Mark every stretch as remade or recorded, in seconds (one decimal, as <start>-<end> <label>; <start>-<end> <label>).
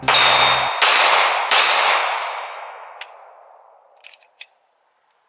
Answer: 0.0-2.0 recorded; 2.0-3.0 remade; 3.0-5.3 recorded